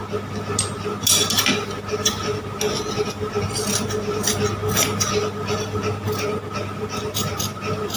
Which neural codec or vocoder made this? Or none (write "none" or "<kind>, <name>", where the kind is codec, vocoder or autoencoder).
none